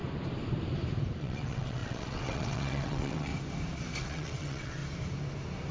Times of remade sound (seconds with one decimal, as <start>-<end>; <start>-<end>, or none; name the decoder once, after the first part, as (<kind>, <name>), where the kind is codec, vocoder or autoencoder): 1.2-3.3 (vocoder, WaveNeXt); 4.0-4.8